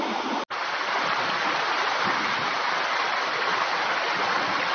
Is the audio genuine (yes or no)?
yes